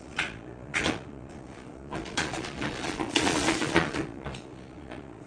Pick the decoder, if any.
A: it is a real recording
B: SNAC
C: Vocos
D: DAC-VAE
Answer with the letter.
C